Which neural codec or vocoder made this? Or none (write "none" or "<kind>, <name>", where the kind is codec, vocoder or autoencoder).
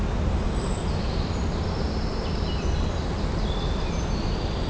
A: none